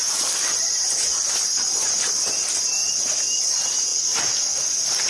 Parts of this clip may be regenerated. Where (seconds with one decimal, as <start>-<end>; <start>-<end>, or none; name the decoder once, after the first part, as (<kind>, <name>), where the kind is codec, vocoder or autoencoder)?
none